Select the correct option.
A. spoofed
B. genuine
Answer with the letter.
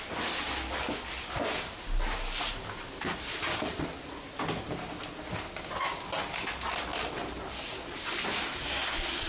B